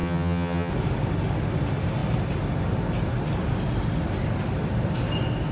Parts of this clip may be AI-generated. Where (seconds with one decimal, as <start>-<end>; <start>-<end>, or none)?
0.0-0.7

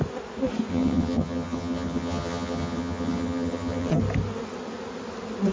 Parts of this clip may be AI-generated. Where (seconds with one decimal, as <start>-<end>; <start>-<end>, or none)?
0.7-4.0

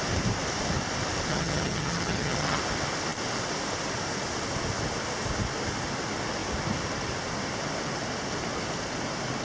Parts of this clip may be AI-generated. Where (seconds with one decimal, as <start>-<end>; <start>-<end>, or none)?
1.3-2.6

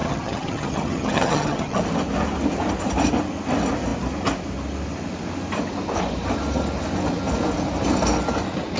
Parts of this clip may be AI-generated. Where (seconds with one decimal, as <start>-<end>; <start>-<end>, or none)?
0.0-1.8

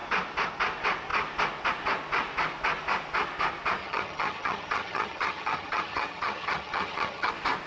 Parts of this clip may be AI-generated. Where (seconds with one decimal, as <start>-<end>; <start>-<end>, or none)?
3.8-7.3

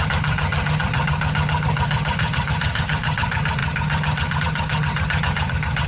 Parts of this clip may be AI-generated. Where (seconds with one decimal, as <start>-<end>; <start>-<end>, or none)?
0.0-5.9

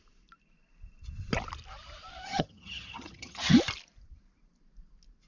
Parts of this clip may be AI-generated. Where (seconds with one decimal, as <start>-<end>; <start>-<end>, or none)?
2.3-3.6

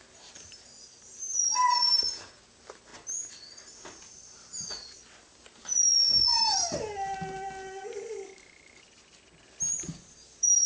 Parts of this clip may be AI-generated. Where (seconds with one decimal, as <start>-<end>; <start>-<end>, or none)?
none